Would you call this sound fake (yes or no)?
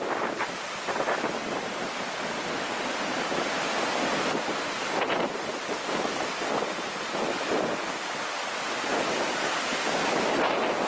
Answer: no